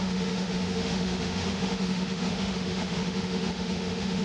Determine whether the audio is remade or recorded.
remade